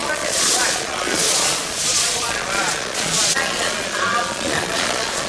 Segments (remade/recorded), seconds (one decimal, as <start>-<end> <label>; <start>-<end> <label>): 0.0-5.3 remade